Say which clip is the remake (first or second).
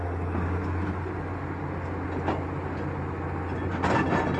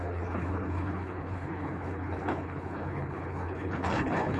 second